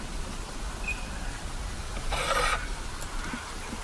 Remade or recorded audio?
recorded